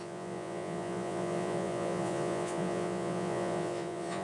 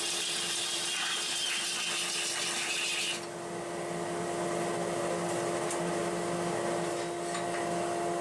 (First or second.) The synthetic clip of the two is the first